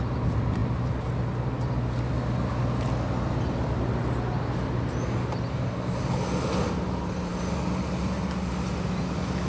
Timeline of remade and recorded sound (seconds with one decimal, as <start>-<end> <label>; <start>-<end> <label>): 0.0-9.5 recorded